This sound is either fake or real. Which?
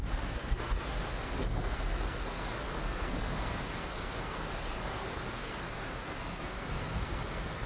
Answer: fake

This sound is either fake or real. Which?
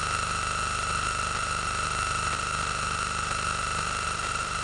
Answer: real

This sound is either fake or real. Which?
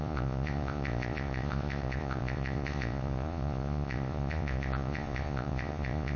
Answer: fake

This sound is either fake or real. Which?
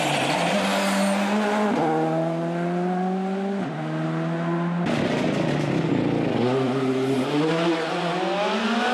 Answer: real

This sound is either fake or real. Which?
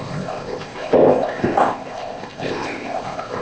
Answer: fake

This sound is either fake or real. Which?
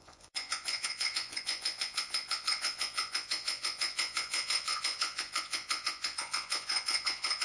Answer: fake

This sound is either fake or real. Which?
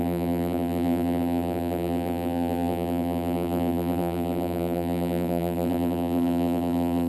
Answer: fake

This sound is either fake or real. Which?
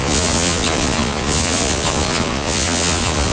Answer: fake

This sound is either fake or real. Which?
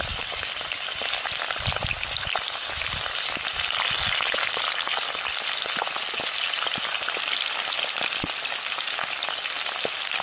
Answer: real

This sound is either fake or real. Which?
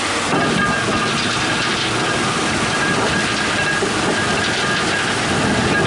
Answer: real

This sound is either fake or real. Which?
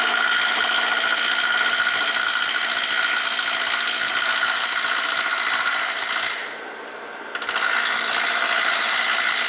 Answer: real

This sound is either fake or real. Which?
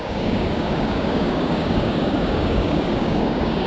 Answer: fake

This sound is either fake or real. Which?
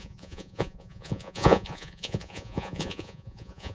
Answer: fake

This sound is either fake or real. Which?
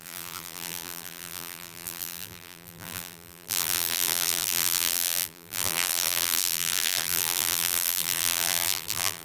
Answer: fake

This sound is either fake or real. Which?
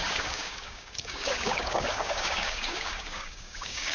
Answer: fake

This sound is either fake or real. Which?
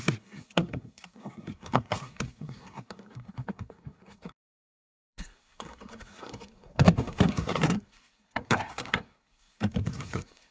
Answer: fake